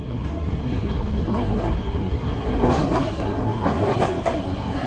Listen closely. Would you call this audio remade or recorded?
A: remade